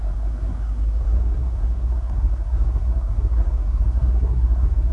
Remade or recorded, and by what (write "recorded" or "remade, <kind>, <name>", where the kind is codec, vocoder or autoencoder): remade, codec, SNAC